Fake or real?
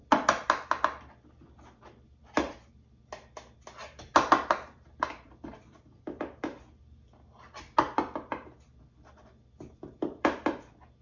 real